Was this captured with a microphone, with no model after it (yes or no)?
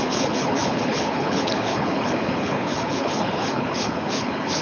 no